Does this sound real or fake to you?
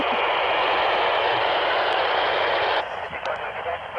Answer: fake